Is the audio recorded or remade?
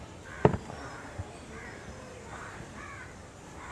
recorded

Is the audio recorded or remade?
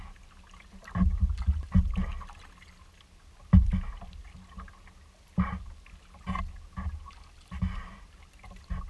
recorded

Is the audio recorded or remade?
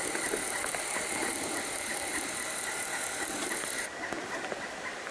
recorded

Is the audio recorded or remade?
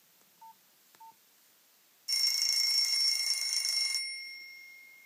recorded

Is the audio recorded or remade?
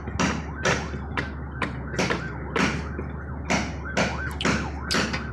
recorded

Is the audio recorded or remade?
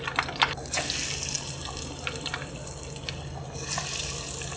recorded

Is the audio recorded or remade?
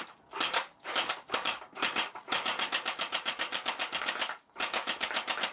remade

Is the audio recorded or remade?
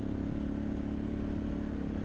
recorded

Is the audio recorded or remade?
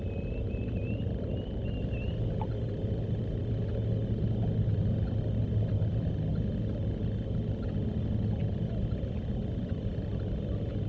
recorded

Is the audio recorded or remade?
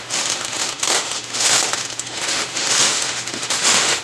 remade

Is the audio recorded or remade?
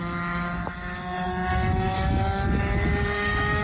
remade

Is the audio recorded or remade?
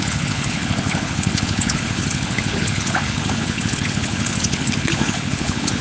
remade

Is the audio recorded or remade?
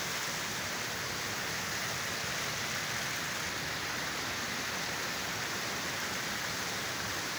recorded